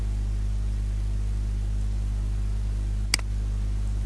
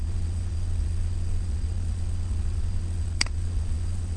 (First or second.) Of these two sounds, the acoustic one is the first